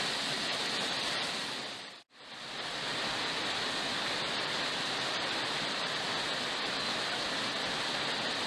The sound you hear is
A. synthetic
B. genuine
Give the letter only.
B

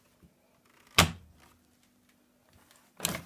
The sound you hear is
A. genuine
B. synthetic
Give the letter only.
A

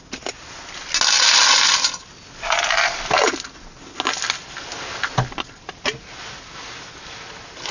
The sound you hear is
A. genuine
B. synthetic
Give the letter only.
A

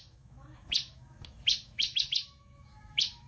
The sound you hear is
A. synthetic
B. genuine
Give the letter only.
A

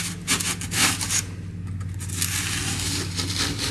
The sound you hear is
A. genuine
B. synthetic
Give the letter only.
A